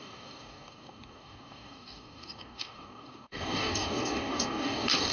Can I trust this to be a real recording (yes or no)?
no